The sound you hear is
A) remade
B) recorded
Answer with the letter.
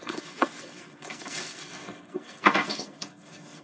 A